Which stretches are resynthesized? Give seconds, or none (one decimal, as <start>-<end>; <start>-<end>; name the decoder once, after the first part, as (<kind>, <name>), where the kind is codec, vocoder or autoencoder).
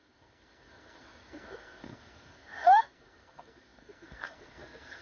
0.0-5.0 (codec, SNAC)